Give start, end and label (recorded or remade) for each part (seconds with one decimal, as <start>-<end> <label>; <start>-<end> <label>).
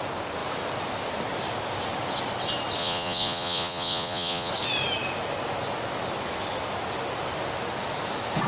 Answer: 0.0-2.8 recorded; 2.8-4.5 remade; 4.5-8.5 recorded